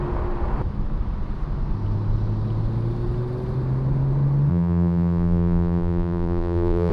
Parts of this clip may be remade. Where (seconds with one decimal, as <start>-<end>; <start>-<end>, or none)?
4.5-6.9